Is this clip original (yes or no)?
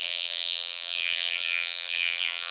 no